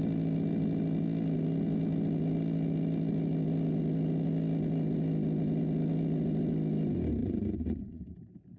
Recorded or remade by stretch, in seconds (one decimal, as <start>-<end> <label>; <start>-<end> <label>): 0.0-7.2 recorded; 7.2-8.0 remade; 8.0-8.6 recorded